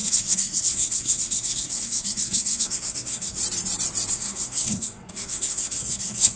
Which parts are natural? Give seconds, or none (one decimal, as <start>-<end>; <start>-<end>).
3.4-4.1

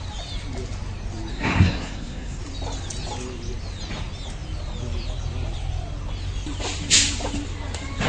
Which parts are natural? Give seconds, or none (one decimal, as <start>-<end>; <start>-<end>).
0.0-1.3; 2.4-8.1

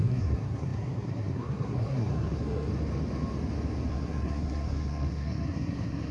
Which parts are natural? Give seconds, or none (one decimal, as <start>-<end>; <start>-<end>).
2.7-3.9

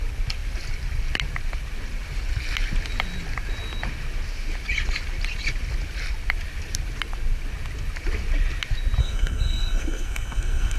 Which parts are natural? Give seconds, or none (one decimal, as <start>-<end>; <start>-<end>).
0.0-9.0

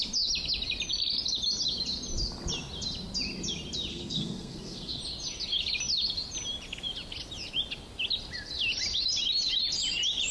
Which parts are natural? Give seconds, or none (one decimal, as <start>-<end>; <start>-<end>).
0.0-3.9; 5.0-10.3

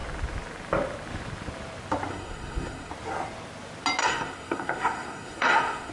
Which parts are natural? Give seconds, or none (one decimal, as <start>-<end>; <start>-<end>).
0.0-2.1; 2.9-4.0